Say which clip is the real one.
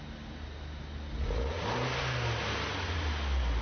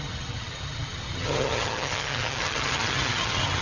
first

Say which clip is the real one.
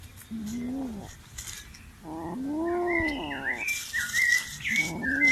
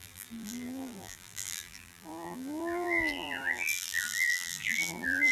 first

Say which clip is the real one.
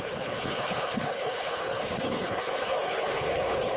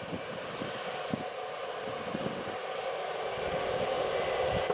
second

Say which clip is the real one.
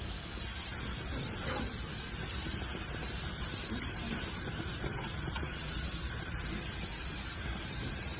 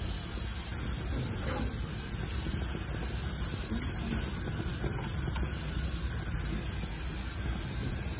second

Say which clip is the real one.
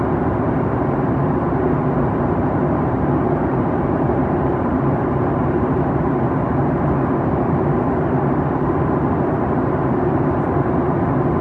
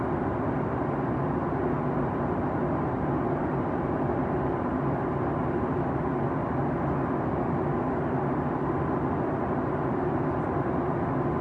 second